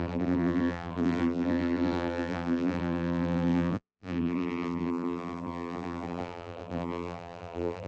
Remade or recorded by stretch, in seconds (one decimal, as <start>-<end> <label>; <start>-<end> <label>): 0.0-7.9 remade